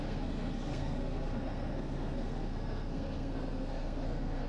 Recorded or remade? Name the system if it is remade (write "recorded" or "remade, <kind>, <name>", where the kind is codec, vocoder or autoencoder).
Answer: remade, codec, SNAC